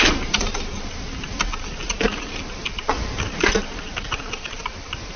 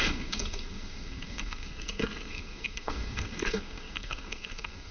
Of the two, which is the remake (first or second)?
second